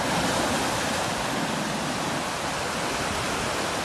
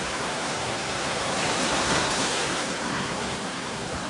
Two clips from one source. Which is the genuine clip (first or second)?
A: first